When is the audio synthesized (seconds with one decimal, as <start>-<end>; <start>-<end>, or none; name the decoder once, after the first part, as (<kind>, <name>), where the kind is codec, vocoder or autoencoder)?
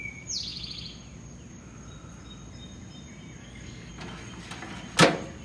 3.4-3.9 (codec, DAC)